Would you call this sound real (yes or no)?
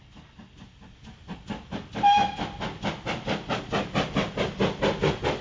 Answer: yes